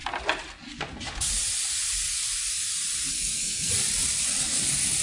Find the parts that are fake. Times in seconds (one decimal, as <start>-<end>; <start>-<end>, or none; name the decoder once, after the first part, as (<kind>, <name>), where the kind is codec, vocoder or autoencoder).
3.1-3.7 (codec, SNAC)